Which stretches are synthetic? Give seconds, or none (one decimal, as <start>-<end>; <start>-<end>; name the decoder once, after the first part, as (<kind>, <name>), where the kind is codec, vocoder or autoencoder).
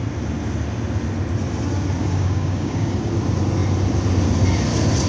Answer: 2.0-3.1 (codec, DAC)